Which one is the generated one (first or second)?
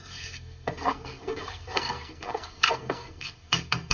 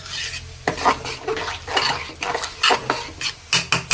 first